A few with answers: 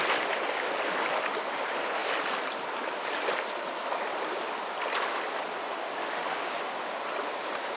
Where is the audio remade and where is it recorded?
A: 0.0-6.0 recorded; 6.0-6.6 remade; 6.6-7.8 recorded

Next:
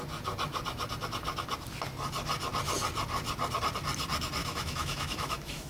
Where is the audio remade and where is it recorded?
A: 0.0-4.4 recorded; 4.4-5.7 remade

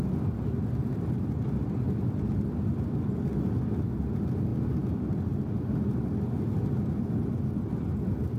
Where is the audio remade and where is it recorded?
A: 0.0-8.4 recorded